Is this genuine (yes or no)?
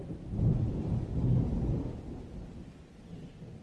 yes